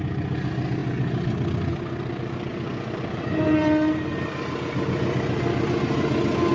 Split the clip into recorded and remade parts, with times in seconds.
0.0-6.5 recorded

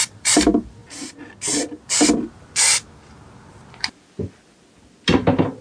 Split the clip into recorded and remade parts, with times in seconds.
0.0-5.6 recorded

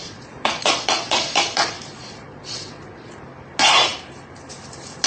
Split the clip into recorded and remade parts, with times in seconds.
0.0-3.1 remade; 3.1-5.1 recorded